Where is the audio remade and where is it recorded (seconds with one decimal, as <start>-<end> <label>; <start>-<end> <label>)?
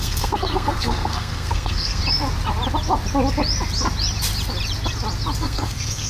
0.0-2.0 remade; 2.0-5.4 recorded; 5.4-6.1 remade